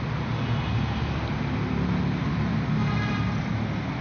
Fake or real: real